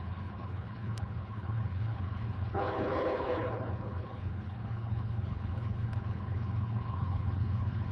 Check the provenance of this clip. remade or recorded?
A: remade